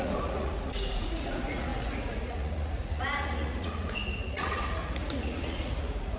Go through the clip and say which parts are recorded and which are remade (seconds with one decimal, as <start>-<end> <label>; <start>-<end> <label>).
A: 0.0-6.2 remade